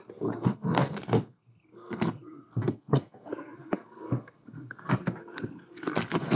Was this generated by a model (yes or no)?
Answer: yes